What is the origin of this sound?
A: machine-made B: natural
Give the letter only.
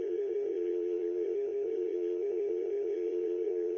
A